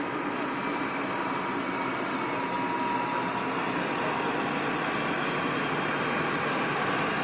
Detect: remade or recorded recorded